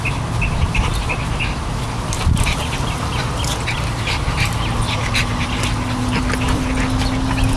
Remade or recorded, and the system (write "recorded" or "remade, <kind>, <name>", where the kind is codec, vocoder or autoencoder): recorded